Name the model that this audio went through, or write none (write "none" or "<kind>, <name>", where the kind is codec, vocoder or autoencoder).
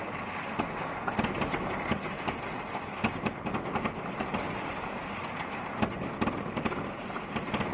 none